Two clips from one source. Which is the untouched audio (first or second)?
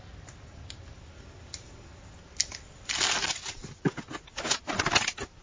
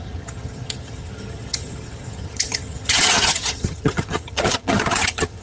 first